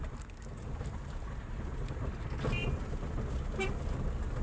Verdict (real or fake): real